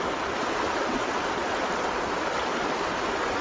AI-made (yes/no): no